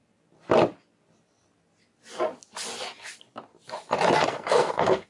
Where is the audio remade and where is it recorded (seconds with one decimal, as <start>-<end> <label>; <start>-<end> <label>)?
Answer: 0.0-4.2 recorded; 4.2-5.1 remade

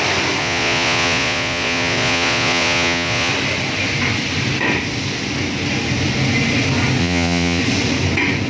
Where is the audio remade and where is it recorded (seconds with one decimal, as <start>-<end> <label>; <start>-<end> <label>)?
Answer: 0.0-0.4 recorded; 0.4-3.3 remade; 3.3-7.0 recorded; 7.0-7.6 remade; 7.6-8.5 recorded